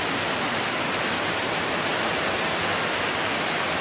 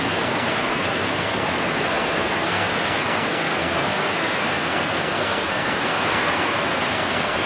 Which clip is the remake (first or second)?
second